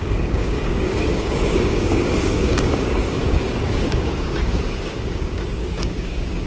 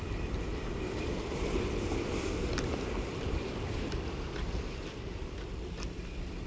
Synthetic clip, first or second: first